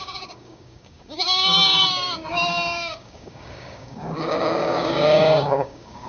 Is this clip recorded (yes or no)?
no